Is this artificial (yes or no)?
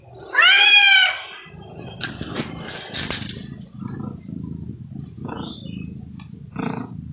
no